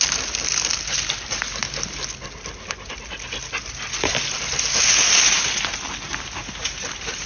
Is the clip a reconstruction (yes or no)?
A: no